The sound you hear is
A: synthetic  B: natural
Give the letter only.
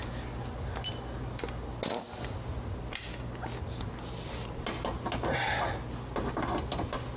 B